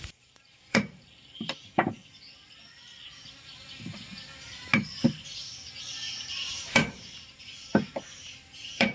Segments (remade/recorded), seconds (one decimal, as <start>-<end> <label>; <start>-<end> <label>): 0.0-2.0 remade; 2.0-6.2 recorded; 6.2-7.5 remade; 7.5-8.2 recorded; 8.2-8.9 remade